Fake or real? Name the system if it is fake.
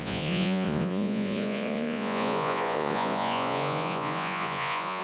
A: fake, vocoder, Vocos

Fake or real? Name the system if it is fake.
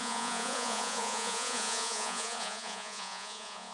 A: fake, vocoder, Vocos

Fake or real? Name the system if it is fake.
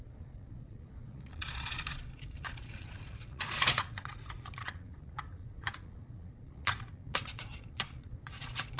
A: fake, vocoder, Vocos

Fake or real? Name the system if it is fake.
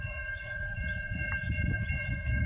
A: fake, vocoder, Vocos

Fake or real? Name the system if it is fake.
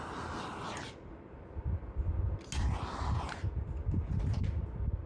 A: real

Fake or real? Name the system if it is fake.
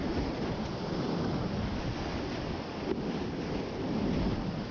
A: real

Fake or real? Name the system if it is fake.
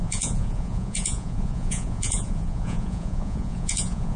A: fake, vocoder, Vocos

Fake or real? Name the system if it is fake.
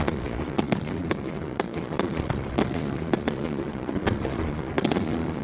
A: fake, vocoder, Vocos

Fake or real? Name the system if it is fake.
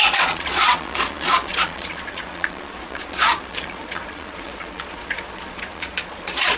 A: fake, vocoder, Vocos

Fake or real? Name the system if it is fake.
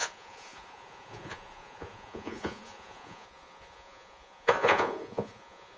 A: fake, vocoder, Vocos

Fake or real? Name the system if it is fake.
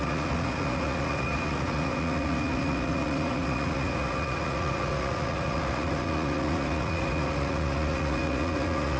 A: fake, vocoder, Vocos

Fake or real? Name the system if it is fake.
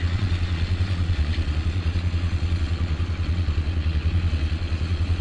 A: fake, vocoder, Vocos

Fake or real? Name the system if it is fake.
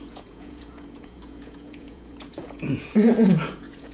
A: fake, vocoder, Vocos